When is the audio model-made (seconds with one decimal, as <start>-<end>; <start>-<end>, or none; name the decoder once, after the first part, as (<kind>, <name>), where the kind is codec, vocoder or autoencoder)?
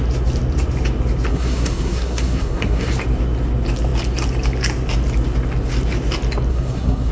1.3-2.9 (codec, SNAC); 6.5-7.1